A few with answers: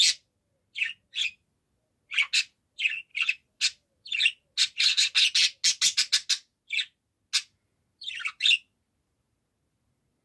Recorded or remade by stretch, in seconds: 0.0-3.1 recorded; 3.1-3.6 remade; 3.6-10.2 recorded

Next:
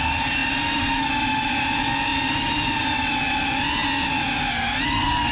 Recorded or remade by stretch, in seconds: 0.0-5.3 recorded